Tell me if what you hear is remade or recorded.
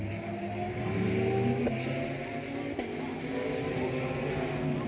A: recorded